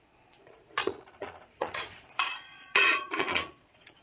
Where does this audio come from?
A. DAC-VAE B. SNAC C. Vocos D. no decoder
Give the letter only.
C